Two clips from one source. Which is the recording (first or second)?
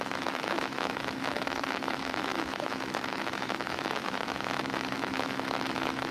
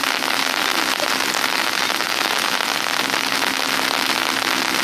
second